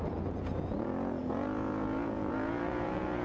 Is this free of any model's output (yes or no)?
no